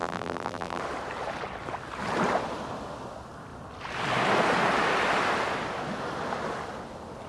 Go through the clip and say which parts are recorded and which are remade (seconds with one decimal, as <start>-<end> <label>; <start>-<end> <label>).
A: 0.0-0.8 remade; 0.8-7.3 recorded